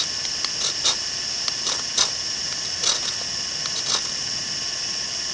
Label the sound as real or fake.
real